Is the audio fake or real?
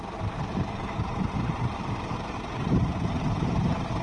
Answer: fake